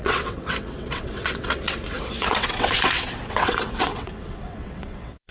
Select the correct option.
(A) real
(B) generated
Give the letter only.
B